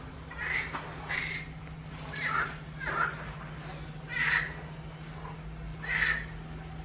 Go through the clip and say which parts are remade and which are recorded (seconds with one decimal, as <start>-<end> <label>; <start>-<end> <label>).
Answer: 0.0-6.8 recorded